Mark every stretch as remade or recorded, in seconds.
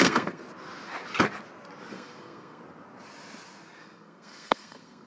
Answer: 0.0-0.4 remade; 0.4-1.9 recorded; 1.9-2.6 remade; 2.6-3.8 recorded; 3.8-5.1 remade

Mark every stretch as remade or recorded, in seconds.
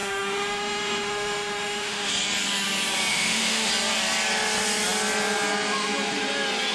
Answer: 0.0-2.1 remade; 2.1-3.1 recorded; 3.1-3.7 remade; 3.7-6.7 recorded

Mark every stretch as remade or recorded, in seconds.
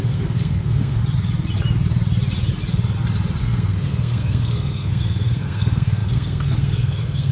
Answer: 0.0-1.0 remade; 1.0-3.4 recorded; 3.4-7.3 remade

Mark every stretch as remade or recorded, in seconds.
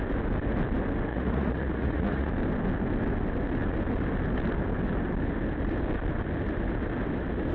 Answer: 0.0-1.1 recorded; 1.1-2.3 remade; 2.3-7.5 recorded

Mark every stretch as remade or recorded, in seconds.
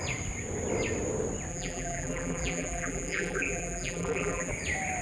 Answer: 0.0-1.5 recorded; 1.5-4.5 remade; 4.5-5.0 recorded